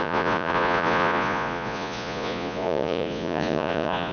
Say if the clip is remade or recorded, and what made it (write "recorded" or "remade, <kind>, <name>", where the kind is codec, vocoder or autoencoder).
remade, vocoder, Vocos